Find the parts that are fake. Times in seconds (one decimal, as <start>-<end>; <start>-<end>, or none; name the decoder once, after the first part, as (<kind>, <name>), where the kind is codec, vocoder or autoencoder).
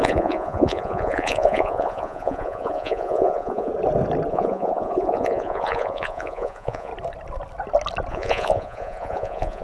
0.0-3.7 (vocoder, Vocos); 4.3-6.9; 8.1-9.6